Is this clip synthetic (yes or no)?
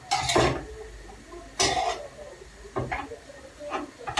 no